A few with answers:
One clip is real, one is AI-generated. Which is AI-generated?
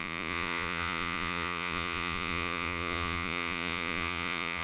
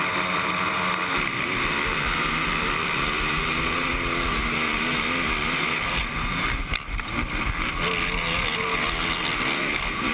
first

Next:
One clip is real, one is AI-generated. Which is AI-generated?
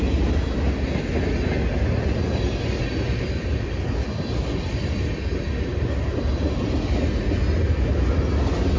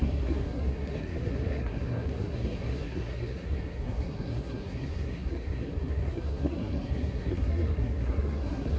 second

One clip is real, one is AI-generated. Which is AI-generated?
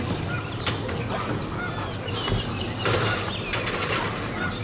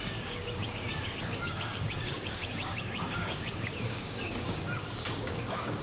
second